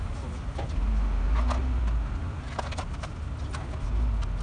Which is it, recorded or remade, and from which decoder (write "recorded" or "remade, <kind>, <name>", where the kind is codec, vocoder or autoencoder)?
recorded